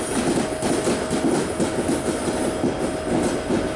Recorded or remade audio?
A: recorded